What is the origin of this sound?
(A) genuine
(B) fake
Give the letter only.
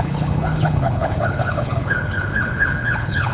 B